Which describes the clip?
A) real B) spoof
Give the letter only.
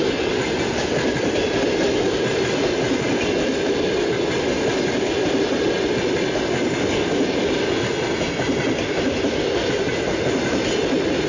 A